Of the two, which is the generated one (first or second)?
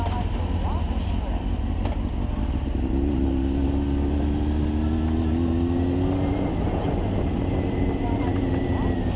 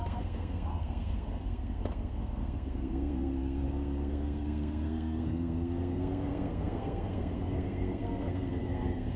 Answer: second